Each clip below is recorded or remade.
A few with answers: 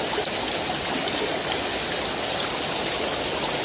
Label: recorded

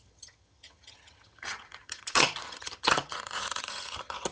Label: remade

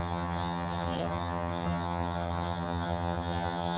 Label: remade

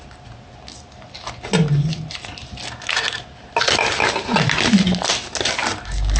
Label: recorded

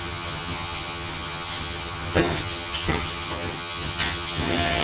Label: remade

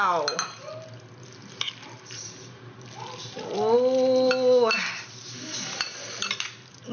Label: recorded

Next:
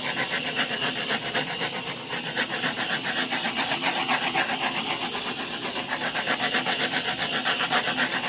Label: recorded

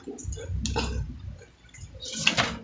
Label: recorded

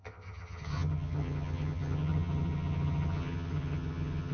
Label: remade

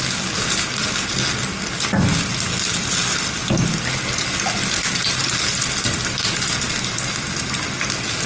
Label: recorded